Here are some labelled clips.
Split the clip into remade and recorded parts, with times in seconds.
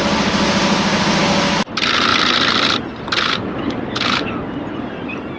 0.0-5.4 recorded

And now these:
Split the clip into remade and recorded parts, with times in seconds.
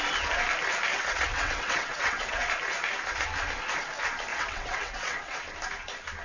0.0-0.9 recorded; 0.9-2.5 remade; 2.5-4.3 recorded; 4.3-5.4 remade; 5.4-6.2 recorded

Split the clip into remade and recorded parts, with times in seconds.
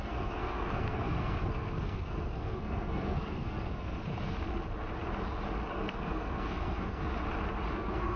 0.0-4.0 remade; 4.0-5.7 recorded; 5.7-7.0 remade; 7.0-7.7 recorded; 7.7-8.2 remade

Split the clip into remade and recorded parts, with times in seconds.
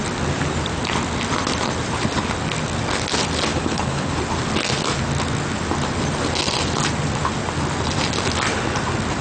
0.0-3.5 recorded; 3.5-4.1 remade; 4.1-9.2 recorded